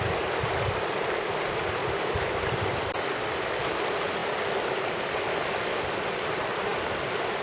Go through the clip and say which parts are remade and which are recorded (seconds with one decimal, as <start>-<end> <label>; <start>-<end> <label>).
0.0-7.4 recorded